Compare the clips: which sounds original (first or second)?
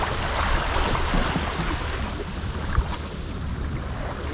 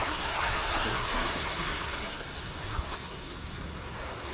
first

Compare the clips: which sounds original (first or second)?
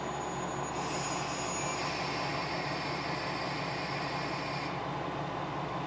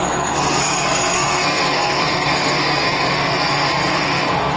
first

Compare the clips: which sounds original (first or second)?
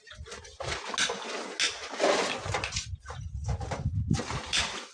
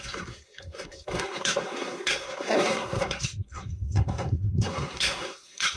first